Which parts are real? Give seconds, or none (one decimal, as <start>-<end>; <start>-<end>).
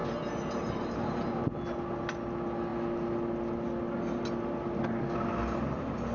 0.0-6.1